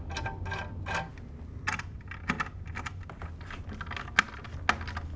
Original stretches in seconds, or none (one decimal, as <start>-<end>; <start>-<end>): 0.0-5.2